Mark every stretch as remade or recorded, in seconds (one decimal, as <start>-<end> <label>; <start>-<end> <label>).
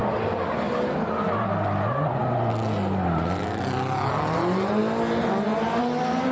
0.0-6.3 recorded